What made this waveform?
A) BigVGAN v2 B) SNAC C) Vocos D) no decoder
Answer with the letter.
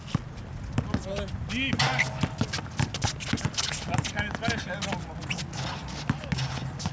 D